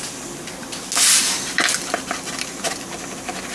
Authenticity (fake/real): real